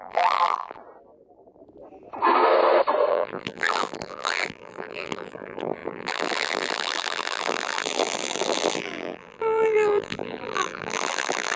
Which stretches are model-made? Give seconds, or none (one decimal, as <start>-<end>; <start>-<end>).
0.0-0.8; 3.1-11.6